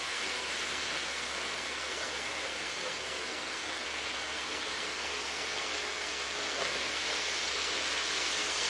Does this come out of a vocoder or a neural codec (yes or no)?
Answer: yes